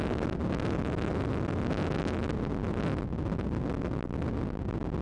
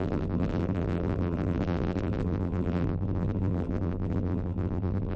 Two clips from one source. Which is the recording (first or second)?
first